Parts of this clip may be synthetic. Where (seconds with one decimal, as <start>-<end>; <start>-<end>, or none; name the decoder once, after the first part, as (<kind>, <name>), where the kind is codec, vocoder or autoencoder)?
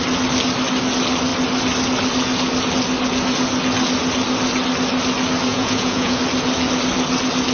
5.5-6.2 (vocoder, Vocos)